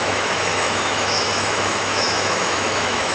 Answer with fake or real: fake